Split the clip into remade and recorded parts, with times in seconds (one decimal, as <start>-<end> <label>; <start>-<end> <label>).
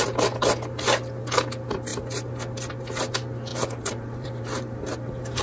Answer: 0.0-3.5 recorded; 3.5-5.4 remade